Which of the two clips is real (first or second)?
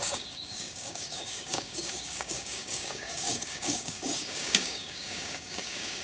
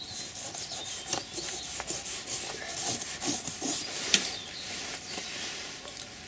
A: second